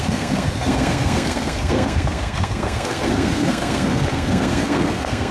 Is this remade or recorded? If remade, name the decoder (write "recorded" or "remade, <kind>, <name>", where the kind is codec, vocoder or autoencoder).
remade, codec, SNAC